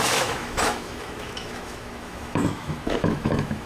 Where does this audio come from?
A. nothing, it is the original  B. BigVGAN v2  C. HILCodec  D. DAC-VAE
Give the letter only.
D